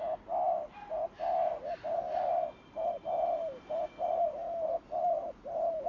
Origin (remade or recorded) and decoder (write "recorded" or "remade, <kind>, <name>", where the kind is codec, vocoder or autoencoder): recorded